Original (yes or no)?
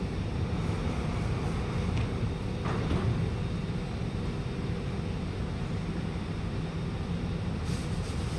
yes